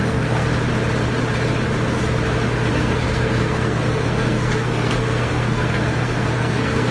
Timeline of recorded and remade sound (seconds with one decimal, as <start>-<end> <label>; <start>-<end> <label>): 0.0-0.5 remade; 0.5-2.7 recorded; 2.7-6.9 remade